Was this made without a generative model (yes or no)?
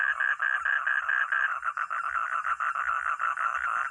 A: yes